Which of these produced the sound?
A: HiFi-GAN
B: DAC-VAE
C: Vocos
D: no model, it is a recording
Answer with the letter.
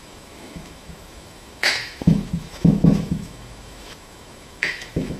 B